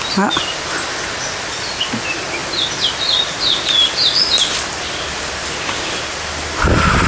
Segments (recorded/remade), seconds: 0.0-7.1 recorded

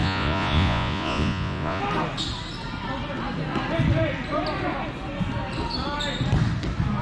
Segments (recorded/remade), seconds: 0.0-1.8 remade; 1.8-7.0 recorded

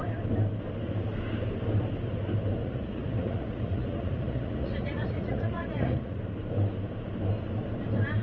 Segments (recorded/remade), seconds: 0.0-2.6 recorded; 2.6-6.2 remade; 6.2-8.2 recorded

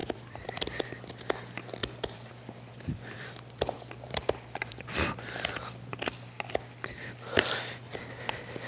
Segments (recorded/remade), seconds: 0.0-0.5 remade; 0.5-1.8 recorded; 1.8-2.3 remade; 2.3-2.7 recorded; 2.7-5.9 remade; 5.9-8.7 recorded

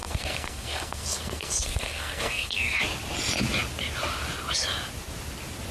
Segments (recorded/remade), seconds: 0.0-2.8 remade; 2.8-5.7 recorded

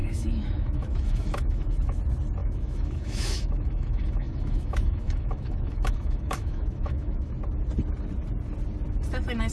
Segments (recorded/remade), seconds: 0.0-2.0 remade; 2.0-2.4 recorded; 2.4-7.3 remade; 7.3-9.5 recorded

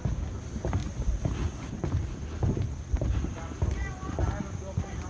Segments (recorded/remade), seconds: 0.0-0.8 recorded; 0.8-3.9 remade; 3.9-5.1 recorded